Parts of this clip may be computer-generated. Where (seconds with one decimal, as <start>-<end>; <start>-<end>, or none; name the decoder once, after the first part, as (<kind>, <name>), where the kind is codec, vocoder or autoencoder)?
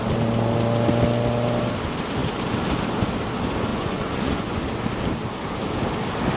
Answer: 3.7-4.6 (vocoder, Vocos)